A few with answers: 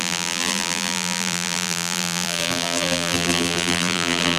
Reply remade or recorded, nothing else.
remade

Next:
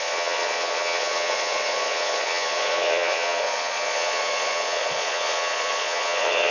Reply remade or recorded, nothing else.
remade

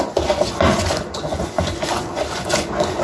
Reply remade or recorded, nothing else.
remade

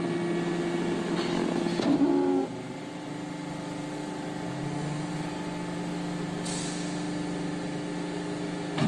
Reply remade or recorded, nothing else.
recorded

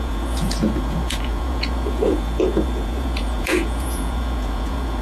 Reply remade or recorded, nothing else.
remade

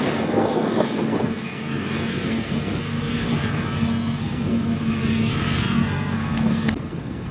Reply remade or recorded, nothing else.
remade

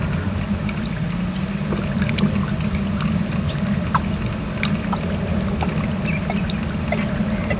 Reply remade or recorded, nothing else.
recorded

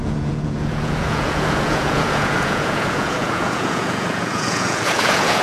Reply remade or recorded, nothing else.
remade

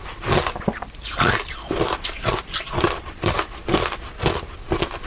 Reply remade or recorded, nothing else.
remade